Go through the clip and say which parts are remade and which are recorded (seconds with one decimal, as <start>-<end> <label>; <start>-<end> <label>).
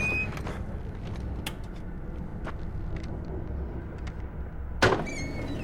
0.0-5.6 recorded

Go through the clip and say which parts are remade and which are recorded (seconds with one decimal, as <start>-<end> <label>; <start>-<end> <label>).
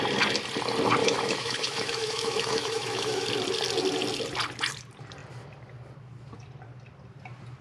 0.0-1.0 recorded; 1.0-3.3 remade; 3.3-7.6 recorded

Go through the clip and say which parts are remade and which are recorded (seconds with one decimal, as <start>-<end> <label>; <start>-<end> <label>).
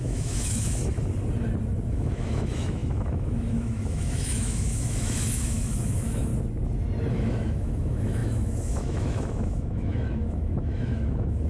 0.0-0.8 remade; 0.8-1.9 recorded; 1.9-6.3 remade; 6.3-7.1 recorded; 7.1-11.5 remade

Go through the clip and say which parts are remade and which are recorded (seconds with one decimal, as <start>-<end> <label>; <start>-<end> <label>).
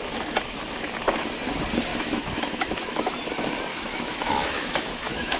0.0-1.9 recorded; 1.9-3.1 remade; 3.1-3.7 recorded; 3.7-5.4 remade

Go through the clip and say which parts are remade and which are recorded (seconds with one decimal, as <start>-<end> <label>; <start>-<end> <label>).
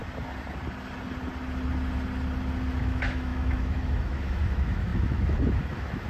0.0-2.8 recorded; 2.8-6.1 remade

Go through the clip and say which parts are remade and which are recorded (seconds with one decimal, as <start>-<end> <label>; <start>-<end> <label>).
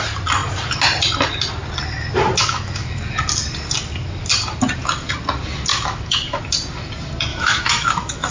0.0-2.4 recorded; 2.4-3.0 remade; 3.0-5.7 recorded; 5.7-6.4 remade; 6.4-7.3 recorded; 7.3-8.3 remade